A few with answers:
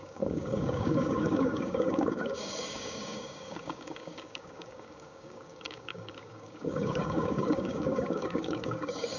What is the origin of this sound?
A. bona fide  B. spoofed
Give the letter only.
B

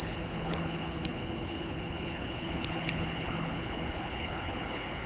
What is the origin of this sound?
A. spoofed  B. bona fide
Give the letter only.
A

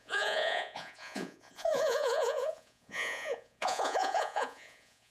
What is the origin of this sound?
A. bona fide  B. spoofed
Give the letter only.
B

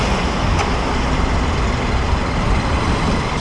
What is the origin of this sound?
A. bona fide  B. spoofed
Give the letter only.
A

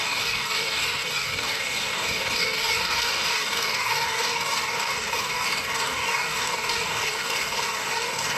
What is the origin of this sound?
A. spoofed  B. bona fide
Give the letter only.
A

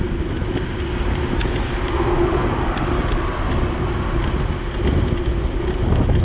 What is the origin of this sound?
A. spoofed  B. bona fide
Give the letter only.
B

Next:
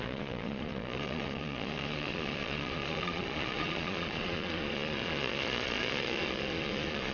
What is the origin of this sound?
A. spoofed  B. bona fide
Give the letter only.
A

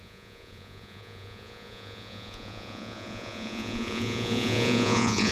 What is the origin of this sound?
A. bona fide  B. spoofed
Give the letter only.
B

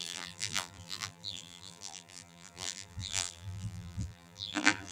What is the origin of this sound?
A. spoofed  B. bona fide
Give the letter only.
A